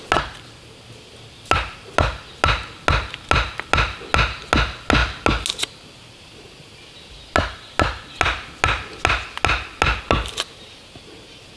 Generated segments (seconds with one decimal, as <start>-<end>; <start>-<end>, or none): none